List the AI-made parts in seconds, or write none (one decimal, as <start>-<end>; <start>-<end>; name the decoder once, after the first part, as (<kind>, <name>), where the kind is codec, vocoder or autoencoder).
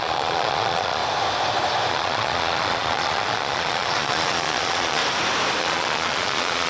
0.0-1.0 (vocoder, Vocos); 1.9-5.0; 5.6-6.7